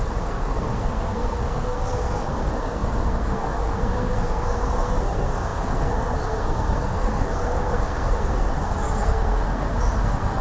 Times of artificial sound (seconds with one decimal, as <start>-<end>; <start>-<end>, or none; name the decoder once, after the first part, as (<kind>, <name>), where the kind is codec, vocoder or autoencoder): 0.0-10.4 (codec, SNAC)